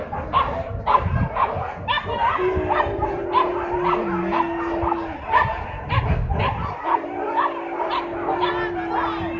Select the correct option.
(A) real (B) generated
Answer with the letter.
A